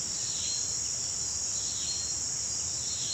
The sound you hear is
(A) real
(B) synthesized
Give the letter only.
A